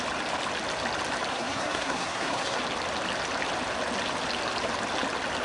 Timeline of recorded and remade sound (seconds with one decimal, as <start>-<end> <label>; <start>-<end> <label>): 0.0-1.3 recorded; 1.3-2.6 remade; 2.6-5.4 recorded